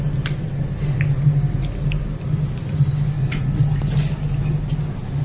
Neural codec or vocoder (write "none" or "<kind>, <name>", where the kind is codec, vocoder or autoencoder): none